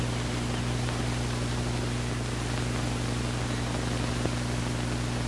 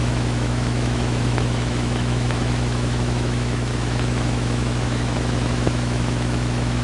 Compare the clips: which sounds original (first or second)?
first